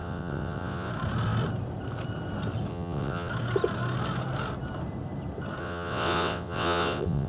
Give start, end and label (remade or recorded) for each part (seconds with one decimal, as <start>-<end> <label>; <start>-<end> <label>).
0.0-0.9 remade; 0.9-2.7 recorded; 2.7-3.3 remade; 3.3-5.6 recorded; 5.6-7.3 remade